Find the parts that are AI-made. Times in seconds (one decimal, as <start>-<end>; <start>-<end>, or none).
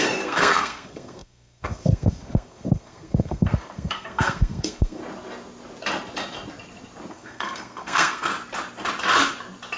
0.0-5.0; 7.1-8.3